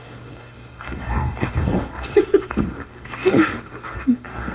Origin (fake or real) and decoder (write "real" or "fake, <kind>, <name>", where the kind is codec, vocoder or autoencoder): fake, codec, SNAC